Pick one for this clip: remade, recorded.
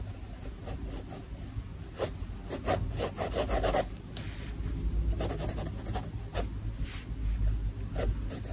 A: recorded